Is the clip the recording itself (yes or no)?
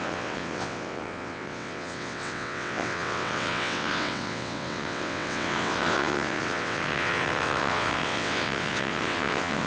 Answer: no